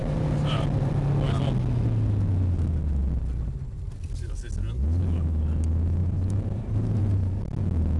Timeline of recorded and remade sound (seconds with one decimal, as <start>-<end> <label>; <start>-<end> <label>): 0.0-0.9 remade; 0.9-6.0 recorded; 6.0-7.0 remade; 7.0-8.0 recorded